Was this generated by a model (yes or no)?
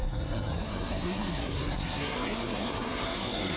yes